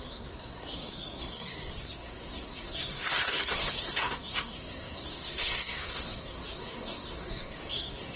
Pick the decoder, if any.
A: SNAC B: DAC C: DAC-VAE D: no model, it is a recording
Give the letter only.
A